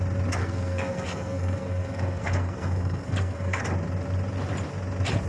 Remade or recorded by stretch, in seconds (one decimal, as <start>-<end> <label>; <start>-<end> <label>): 0.0-0.4 recorded; 0.4-3.6 remade; 3.6-5.3 recorded